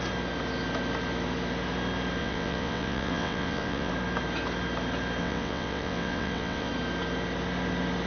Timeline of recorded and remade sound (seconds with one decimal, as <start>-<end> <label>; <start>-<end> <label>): 0.0-2.2 recorded; 2.2-3.9 remade; 3.9-5.2 recorded; 5.2-6.7 remade; 6.7-8.1 recorded

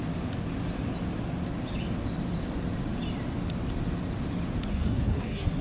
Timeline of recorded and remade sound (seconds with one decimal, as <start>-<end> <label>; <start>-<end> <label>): 0.0-4.7 recorded; 4.7-5.6 remade

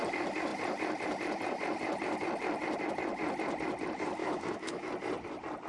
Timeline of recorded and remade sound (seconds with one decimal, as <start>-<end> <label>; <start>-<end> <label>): 0.0-4.2 recorded; 4.2-4.9 remade; 4.9-5.7 recorded